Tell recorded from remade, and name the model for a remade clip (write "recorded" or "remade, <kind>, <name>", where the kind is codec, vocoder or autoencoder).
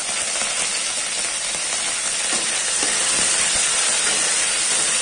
recorded